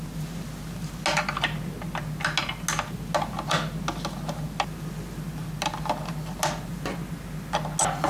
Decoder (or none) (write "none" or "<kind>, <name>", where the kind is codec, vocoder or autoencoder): none